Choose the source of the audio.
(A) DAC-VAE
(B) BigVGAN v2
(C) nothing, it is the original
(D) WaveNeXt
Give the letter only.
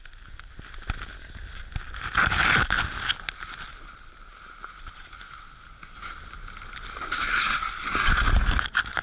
C